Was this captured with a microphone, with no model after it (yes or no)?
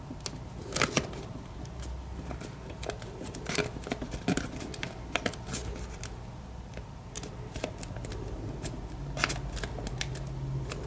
yes